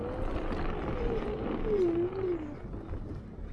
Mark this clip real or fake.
real